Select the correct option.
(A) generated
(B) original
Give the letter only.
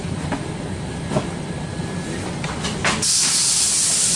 B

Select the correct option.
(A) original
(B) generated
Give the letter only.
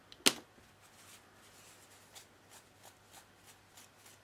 A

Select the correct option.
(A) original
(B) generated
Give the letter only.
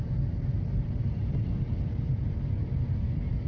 B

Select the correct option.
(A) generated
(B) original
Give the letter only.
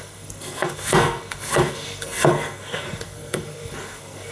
A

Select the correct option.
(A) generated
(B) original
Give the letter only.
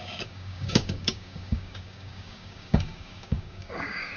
A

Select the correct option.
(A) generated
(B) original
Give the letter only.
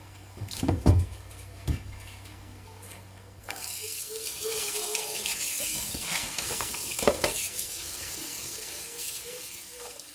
A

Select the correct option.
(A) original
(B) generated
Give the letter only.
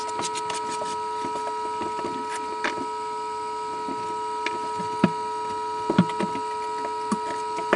A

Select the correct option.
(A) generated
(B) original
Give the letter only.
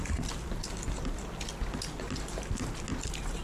B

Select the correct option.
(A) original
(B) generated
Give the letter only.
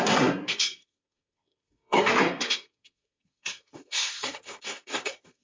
B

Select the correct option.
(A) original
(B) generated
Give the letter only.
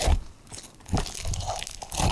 A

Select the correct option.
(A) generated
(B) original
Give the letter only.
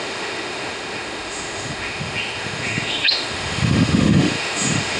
A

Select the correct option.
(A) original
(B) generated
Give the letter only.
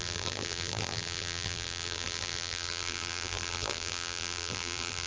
B